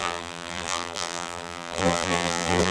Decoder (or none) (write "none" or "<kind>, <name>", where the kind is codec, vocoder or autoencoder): vocoder, BigVGAN v2